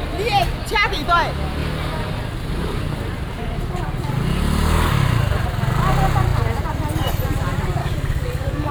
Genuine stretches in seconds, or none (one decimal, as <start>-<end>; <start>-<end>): 0.0-7.8